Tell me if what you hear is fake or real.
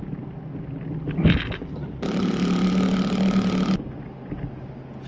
real